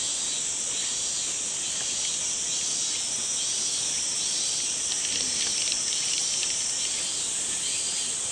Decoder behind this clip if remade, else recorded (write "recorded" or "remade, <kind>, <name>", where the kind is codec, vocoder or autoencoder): recorded